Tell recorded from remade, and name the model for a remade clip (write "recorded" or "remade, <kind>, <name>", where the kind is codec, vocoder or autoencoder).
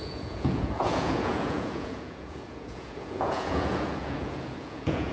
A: remade, vocoder, Vocos